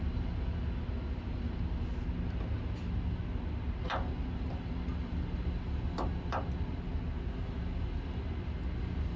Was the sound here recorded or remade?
recorded